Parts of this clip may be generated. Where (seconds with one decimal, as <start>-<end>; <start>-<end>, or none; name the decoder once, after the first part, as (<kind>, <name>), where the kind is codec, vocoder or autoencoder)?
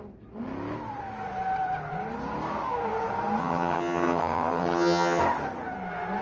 3.4-5.2 (vocoder, HiFi-GAN)